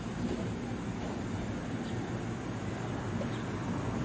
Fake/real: real